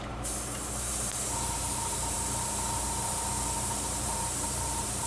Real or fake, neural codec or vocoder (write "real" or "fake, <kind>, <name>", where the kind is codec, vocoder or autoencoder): fake, vocoder, BigVGAN v2